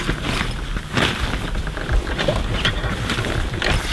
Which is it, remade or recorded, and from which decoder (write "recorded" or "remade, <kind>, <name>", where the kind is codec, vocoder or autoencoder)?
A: recorded